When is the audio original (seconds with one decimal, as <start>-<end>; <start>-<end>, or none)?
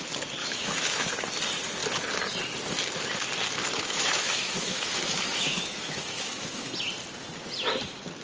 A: 0.0-0.4; 1.1-3.6; 6.7-8.2